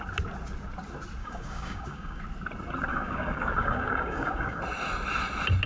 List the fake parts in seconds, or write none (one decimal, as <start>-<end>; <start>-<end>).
1.2-2.2; 2.9-4.6

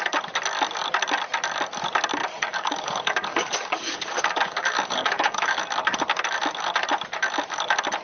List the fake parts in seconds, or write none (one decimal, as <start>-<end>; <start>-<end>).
2.2-5.6

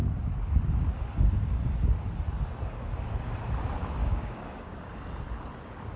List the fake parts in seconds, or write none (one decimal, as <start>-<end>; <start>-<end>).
4.0-4.9

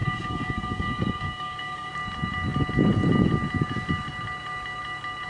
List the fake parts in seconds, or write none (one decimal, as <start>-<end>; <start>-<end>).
0.0-1.9